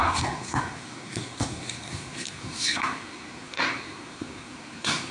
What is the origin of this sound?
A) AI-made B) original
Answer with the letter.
A